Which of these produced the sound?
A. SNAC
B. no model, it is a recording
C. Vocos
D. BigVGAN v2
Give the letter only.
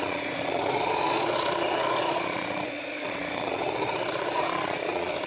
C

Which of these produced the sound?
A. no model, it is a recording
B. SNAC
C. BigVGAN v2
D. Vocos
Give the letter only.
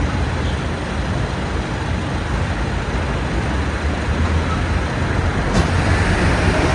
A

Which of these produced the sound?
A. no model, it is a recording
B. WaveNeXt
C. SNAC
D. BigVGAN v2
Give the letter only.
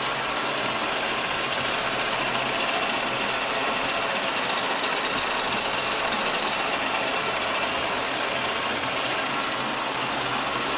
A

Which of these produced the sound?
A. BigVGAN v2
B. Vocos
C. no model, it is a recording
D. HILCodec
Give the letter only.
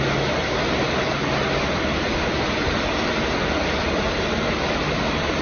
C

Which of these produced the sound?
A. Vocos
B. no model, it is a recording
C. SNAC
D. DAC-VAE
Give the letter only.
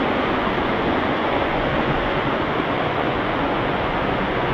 A